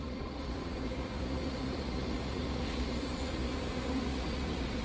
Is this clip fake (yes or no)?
yes